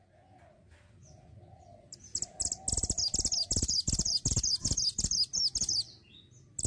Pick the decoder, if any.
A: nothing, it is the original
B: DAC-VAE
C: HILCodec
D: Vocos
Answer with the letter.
A